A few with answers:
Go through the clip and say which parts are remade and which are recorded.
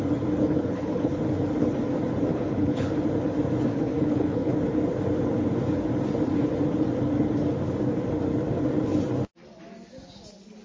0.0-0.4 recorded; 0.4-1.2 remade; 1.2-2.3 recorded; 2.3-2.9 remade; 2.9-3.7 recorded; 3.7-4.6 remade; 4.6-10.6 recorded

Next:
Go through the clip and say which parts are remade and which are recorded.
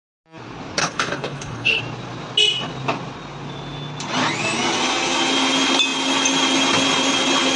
0.0-0.8 recorded; 0.8-1.8 remade; 1.8-7.6 recorded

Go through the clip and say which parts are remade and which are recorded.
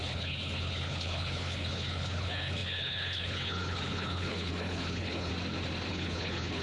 0.0-5.3 remade; 5.3-5.9 recorded; 5.9-6.6 remade